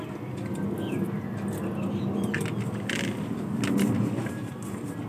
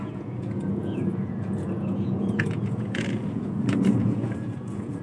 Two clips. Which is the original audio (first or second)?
first